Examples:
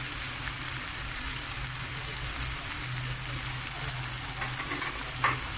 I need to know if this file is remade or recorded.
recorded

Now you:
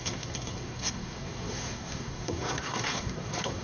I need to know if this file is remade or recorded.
remade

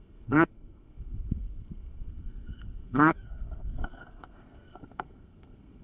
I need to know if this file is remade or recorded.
remade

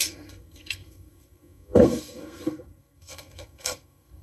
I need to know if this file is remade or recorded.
remade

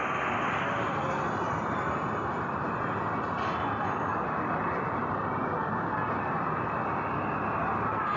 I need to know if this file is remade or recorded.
recorded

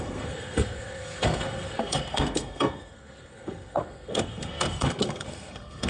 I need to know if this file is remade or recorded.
remade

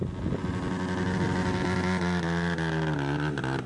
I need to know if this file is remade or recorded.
recorded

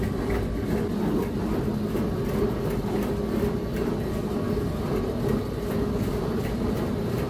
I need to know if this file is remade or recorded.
recorded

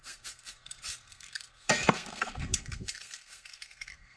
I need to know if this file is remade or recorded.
remade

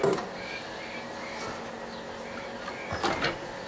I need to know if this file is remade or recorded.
recorded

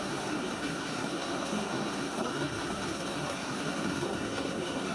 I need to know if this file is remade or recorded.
remade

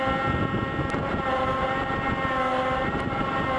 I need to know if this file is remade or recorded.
recorded